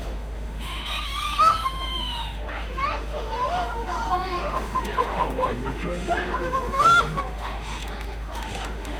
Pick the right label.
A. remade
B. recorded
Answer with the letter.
A